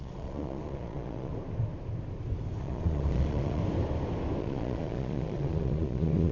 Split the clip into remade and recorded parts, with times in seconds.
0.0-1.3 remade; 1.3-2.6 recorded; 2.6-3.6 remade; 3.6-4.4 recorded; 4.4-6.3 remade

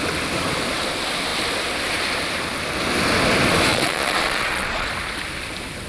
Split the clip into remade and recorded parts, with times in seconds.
0.0-3.7 recorded; 3.7-4.9 remade; 4.9-5.9 recorded

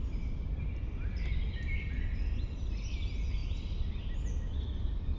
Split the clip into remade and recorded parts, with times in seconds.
0.0-5.2 recorded

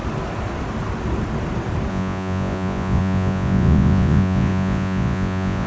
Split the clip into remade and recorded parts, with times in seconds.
0.0-1.9 recorded; 1.9-5.7 remade